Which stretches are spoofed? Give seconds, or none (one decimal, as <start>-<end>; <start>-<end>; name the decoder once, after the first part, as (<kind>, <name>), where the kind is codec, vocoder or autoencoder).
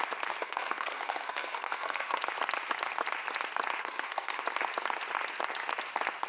0.4-2.2 (codec, SNAC); 3.8-4.4